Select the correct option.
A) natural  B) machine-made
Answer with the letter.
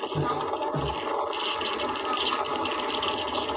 A